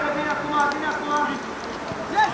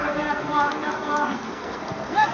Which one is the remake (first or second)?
second